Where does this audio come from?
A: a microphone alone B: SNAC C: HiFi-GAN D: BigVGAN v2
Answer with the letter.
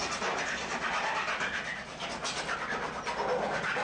A